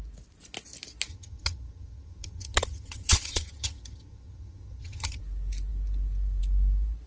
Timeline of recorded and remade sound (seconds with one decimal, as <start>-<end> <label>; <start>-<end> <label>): 0.0-1.1 recorded; 1.1-5.2 remade; 5.2-7.1 recorded

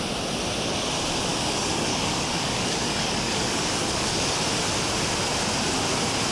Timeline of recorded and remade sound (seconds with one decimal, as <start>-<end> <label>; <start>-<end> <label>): 0.0-1.3 recorded; 1.3-4.4 remade; 4.4-6.3 recorded

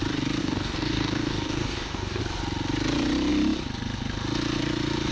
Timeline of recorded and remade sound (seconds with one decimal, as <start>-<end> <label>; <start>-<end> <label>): 0.0-0.4 recorded; 0.4-2.2 remade; 2.2-5.1 recorded

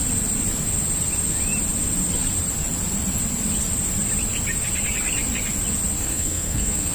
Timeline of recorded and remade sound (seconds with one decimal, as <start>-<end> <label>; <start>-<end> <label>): 0.0-6.0 recorded; 6.0-6.9 remade